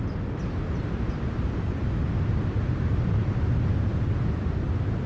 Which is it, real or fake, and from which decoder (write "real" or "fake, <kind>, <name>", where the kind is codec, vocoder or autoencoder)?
real